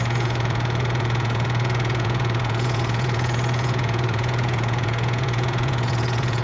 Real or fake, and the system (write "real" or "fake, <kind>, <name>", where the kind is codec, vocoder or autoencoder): fake, vocoder, Vocos